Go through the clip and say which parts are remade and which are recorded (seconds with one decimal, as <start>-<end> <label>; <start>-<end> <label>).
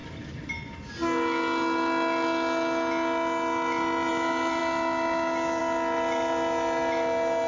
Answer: 0.0-7.5 recorded